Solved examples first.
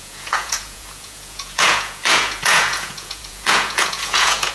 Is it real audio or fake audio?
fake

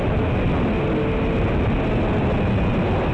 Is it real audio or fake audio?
real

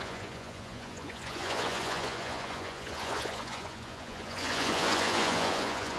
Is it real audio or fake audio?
fake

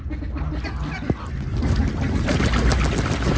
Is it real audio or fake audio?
real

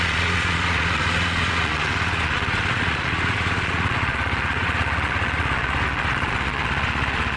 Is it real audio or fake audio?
fake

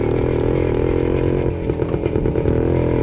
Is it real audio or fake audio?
real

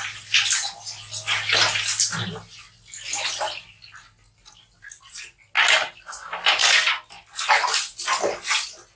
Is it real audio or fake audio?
real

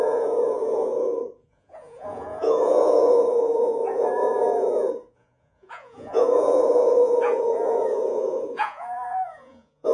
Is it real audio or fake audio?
fake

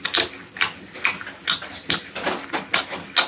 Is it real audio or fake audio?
real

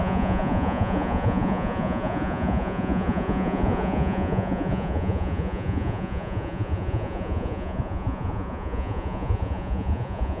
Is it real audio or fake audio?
fake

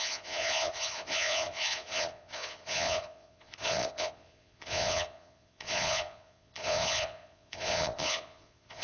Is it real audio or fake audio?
fake